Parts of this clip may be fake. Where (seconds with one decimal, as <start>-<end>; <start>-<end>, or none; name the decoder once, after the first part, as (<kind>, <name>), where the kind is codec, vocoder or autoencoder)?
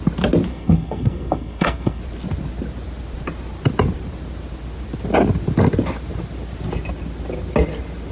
0.5-2.0 (codec, SNAC)